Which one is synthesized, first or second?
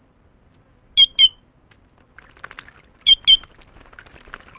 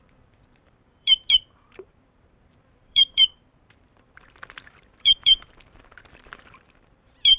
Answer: second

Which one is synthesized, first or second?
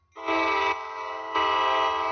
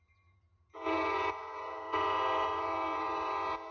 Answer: second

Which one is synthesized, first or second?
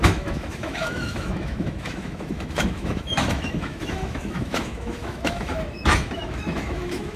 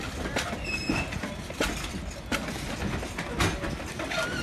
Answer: first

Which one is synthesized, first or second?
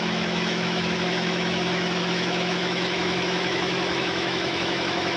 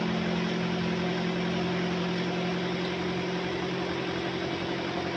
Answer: first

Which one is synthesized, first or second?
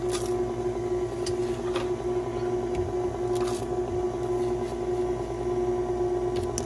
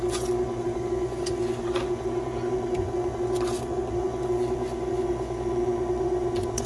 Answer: second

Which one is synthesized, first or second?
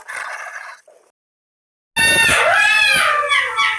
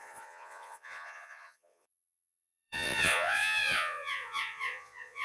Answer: second